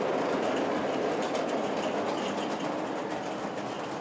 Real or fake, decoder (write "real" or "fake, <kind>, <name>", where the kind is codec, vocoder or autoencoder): real